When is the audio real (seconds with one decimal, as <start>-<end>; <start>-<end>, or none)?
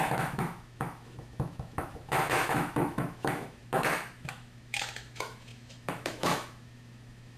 none